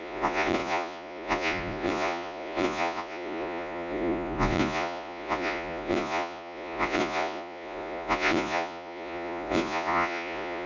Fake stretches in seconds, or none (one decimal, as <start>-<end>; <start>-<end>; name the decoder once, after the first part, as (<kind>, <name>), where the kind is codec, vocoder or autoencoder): 0.0-10.7 (vocoder, Vocos)